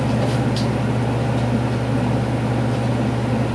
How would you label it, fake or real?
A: real